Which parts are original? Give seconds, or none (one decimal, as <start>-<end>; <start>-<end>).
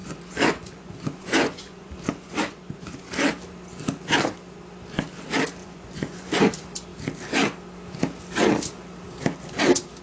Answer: 3.1-5.6; 6.5-10.0